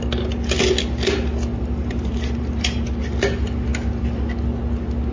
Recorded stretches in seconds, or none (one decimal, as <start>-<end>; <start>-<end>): 0.0-1.5; 2.8-5.1